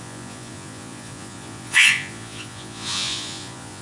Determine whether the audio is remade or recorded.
remade